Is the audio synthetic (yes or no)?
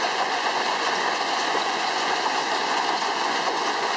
yes